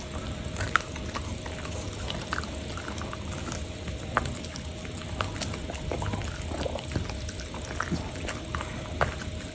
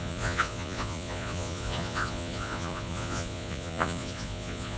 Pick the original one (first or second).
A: first